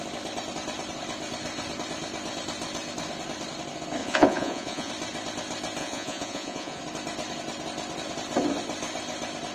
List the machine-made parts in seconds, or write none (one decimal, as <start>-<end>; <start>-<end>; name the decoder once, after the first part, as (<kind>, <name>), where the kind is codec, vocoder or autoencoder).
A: 4.0-4.9 (vocoder, Vocos); 5.8-6.8